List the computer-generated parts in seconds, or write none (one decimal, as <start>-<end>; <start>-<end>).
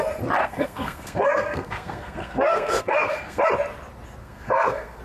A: 0.4-3.4; 4.2-5.0